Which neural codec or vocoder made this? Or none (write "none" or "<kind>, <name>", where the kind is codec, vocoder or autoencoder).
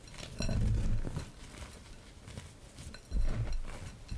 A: none